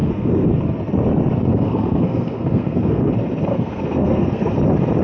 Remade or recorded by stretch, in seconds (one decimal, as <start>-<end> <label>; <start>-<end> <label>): 0.0-0.5 remade; 0.5-1.5 recorded; 1.5-3.1 remade; 3.1-3.5 recorded; 3.5-4.5 remade; 4.5-5.0 recorded